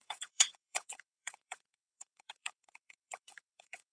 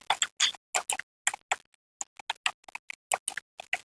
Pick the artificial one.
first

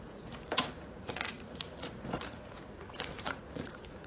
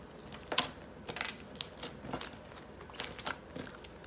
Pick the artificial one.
first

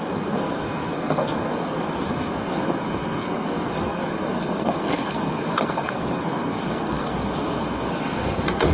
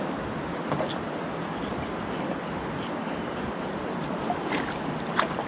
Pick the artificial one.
first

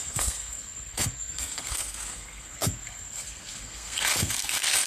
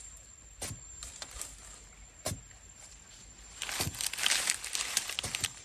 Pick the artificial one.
first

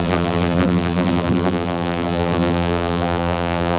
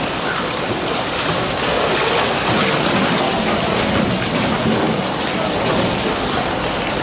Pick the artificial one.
first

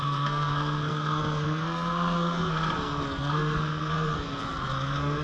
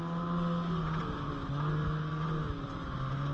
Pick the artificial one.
first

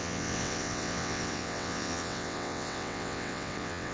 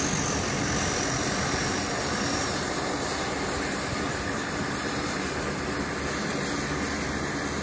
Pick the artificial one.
first